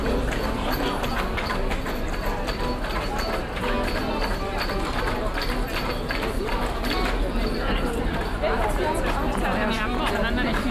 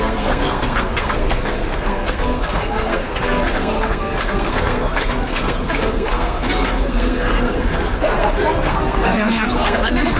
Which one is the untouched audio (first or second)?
first